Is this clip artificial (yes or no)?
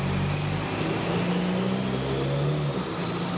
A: no